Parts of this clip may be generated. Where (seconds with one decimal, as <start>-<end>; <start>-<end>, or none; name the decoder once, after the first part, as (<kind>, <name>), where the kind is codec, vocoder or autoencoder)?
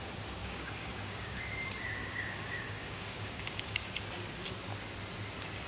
0.4-1.4 (codec, DAC); 2.0-4.0